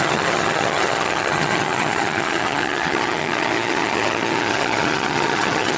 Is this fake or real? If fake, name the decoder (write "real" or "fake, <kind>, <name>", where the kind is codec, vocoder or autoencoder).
fake, vocoder, HiFi-GAN